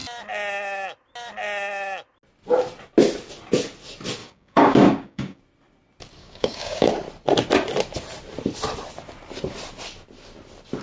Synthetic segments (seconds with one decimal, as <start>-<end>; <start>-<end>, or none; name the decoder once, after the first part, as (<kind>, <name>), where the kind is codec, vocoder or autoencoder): 4.2-5.4 (codec, DAC); 6.2-6.9